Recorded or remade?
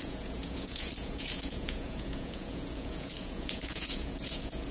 remade